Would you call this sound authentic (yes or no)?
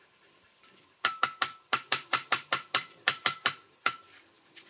no